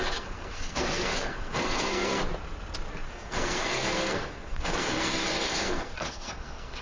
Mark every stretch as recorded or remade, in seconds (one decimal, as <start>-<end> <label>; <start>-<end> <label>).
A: 0.0-2.2 remade; 2.2-3.1 recorded; 3.1-6.8 remade